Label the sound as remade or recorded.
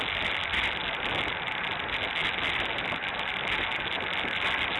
recorded